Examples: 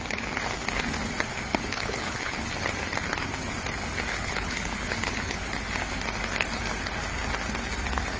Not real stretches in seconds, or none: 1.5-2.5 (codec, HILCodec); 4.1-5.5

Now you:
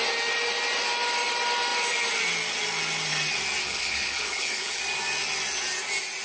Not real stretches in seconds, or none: 3.6-4.8 (codec, HILCodec)

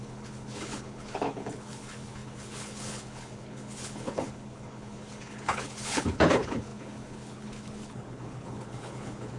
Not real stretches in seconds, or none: 0.0-9.4 (codec, HILCodec)

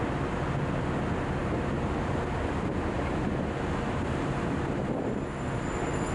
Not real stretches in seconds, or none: none